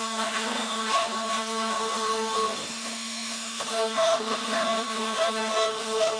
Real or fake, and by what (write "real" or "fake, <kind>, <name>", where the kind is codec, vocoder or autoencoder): fake, autoencoder, DAC-VAE